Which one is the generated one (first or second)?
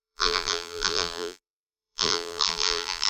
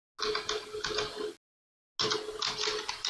first